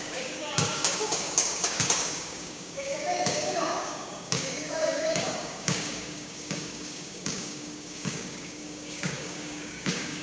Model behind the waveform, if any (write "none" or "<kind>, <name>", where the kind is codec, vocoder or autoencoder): codec, DAC